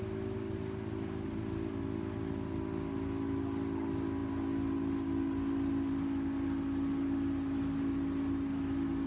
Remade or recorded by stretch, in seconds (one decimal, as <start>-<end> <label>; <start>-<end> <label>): 0.0-9.1 recorded